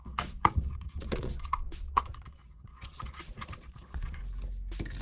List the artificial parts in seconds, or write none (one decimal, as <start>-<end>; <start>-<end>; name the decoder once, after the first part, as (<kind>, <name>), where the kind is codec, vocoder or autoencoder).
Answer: 0.0-4.2 (vocoder, Vocos)

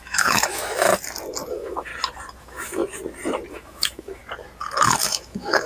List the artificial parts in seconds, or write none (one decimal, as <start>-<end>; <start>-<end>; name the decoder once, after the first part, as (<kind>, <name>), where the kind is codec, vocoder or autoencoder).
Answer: 0.0-0.9 (autoencoder, DAC-VAE); 1.5-1.9; 2.4-2.8; 3.5-4.2; 5.0-5.7

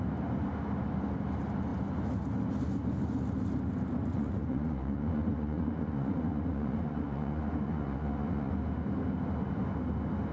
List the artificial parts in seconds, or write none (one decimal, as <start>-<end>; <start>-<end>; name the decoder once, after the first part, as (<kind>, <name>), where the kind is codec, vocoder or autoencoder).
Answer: 4.1-8.5 (vocoder, Vocos)

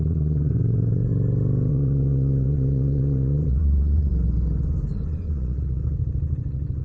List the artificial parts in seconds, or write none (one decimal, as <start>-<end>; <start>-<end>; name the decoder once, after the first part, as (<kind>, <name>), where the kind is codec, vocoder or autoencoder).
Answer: 0.0-1.1 (vocoder, Vocos); 1.7-4.1; 4.6-6.8

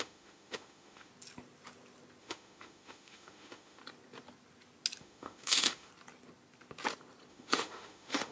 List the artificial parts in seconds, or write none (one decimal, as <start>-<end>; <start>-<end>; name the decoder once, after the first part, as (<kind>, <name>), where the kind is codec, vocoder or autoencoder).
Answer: 0.0-1.1 (autoencoder, DAC-VAE); 2.2-3.8; 5.0-5.9; 7.3-8.3

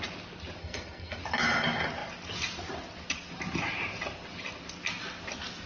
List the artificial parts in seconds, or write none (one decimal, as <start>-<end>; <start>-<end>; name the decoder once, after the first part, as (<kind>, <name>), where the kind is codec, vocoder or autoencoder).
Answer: 0.6-1.2 (codec, SNAC)

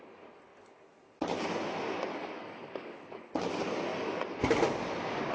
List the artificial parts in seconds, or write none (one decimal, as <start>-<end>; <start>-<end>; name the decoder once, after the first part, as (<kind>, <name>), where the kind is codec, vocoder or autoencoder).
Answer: 2.1-3.3 (codec, DAC)